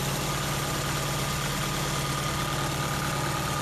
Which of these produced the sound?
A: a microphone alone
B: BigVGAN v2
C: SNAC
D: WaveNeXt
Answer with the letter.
A